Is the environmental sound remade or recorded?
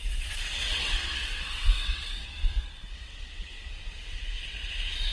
remade